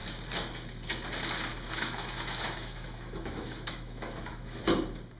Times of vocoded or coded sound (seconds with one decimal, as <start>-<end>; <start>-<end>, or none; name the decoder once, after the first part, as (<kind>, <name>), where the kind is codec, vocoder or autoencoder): 1.5-4.6 (autoencoder, DAC-VAE)